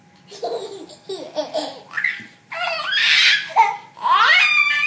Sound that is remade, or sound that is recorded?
recorded